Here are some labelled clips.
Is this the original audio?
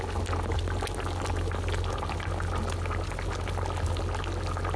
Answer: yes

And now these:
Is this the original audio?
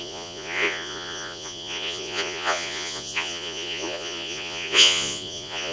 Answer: no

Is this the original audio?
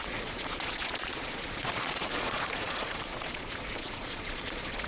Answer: no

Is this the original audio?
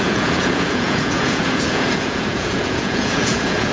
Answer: no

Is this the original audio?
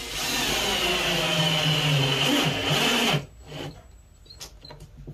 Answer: yes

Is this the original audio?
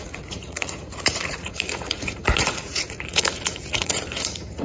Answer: no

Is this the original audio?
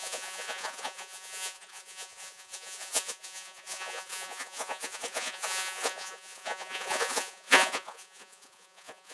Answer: no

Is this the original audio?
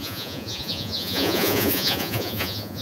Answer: no